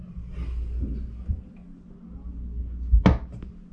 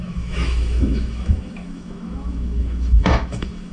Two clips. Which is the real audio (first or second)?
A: first